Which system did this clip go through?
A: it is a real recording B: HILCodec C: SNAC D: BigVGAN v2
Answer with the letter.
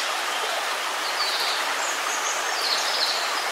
A